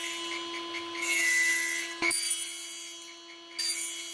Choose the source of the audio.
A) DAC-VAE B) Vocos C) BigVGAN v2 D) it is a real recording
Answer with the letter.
D